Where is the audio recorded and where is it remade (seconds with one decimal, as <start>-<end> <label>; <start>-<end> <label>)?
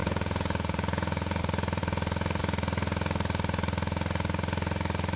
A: 0.0-1.4 remade; 1.4-5.2 recorded